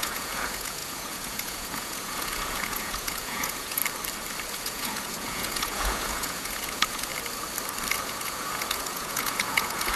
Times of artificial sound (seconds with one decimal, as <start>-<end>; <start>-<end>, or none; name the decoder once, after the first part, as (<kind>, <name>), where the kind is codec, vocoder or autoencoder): 0.0-3.8 (vocoder, Vocos); 4.5-7.1; 7.9-10.0